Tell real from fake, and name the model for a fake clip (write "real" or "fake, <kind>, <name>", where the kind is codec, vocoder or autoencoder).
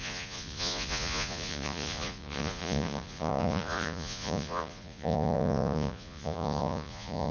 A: fake, vocoder, Vocos